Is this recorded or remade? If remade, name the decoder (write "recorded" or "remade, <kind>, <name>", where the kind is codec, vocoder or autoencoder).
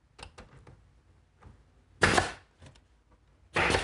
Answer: recorded